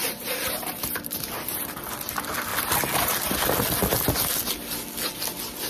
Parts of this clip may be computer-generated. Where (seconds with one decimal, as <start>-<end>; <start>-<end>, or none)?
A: 0.0-1.8